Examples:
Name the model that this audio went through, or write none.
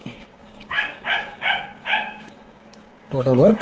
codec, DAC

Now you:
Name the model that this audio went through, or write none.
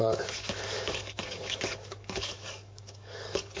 codec, DAC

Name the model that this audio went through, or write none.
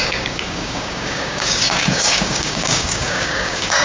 codec, DAC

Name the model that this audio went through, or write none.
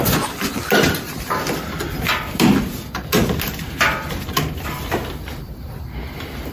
none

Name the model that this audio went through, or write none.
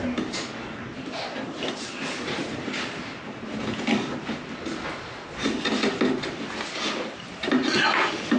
none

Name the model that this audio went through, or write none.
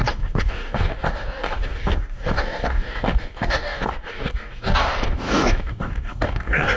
codec, DAC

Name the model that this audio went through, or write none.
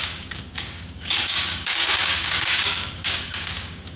codec, DAC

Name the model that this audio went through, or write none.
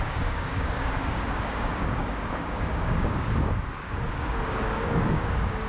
codec, DAC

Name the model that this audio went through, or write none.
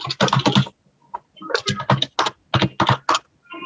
none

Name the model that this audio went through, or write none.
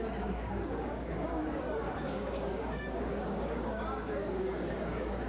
codec, DAC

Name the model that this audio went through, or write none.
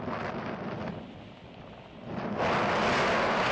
none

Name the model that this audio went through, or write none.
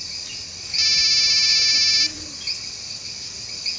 none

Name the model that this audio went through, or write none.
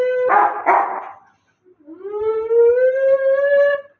none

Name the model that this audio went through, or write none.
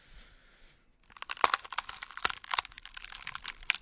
none